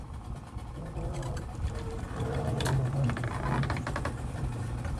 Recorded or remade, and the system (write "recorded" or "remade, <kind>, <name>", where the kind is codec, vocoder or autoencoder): remade, vocoder, BigVGAN v2